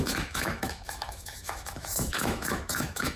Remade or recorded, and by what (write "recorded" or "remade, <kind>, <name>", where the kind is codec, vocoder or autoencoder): remade, autoencoder, DAC-VAE